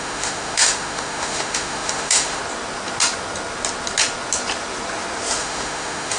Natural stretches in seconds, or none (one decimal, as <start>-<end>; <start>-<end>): 2.4-5.4